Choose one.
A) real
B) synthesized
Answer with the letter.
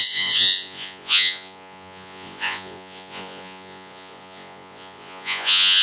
B